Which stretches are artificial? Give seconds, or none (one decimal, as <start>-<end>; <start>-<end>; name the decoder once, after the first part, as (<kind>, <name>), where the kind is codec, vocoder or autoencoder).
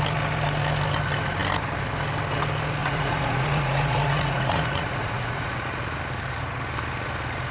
2.8-6.0 (vocoder, Vocos)